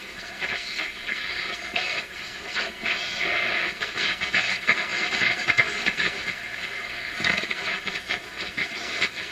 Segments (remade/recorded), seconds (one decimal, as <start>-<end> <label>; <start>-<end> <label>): 0.0-9.3 remade